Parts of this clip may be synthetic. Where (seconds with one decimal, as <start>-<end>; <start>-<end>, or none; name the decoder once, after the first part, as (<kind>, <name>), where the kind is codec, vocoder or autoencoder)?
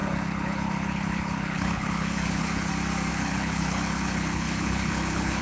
0.0-2.7 (codec, HILCodec); 3.1-5.4